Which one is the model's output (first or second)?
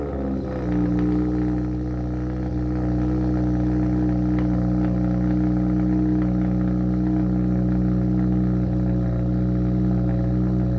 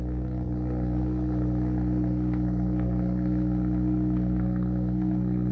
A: second